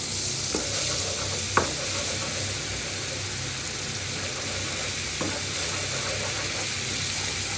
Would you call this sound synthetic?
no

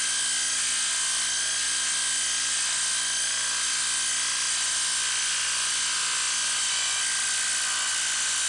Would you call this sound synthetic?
no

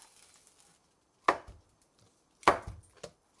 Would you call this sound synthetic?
no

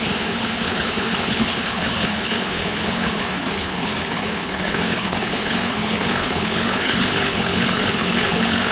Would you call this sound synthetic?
yes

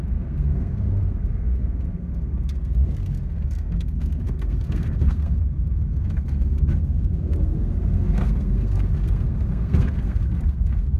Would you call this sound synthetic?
yes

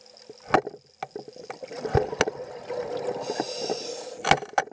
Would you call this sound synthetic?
no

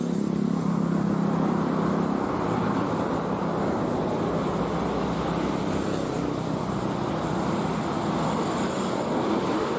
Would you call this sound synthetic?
no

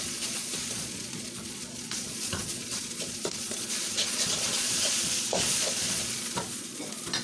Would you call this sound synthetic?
yes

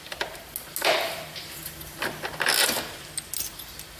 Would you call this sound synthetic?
no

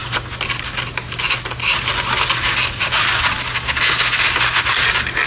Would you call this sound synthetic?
no